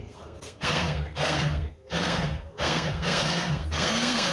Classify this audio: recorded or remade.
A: remade